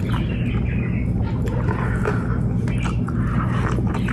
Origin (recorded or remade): recorded